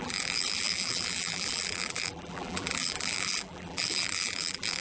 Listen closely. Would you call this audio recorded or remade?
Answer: remade